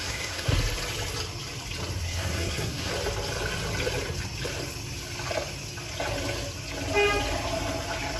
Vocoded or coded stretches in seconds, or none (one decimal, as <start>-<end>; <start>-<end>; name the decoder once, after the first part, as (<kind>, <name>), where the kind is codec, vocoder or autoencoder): 0.0-0.5 (codec, SNAC); 2.0-2.9